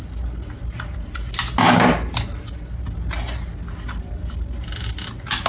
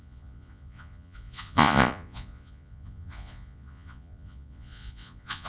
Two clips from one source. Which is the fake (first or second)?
second